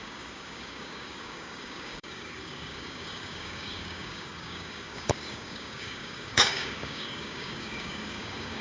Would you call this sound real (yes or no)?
no